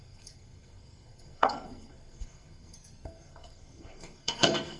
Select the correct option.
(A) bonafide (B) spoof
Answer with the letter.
B